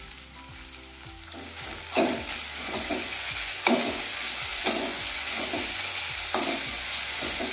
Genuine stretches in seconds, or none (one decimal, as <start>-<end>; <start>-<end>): 0.0-2.6; 4.0-4.5; 6.0-6.7